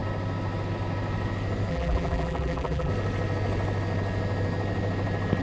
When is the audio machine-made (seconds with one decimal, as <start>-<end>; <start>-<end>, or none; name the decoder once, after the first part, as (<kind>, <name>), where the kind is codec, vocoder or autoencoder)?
1.7-2.9 (vocoder, BigVGAN v2)